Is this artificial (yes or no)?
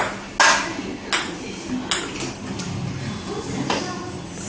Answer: no